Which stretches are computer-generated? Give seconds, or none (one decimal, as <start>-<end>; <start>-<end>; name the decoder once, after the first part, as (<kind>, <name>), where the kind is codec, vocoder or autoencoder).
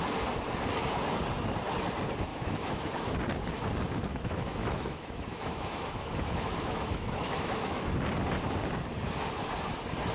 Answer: 2.3-3.2 (autoencoder, DAC-VAE); 4.1-7.9